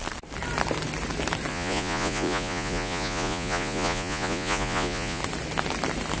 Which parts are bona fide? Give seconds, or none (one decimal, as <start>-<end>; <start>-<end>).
0.0-1.5; 5.2-6.2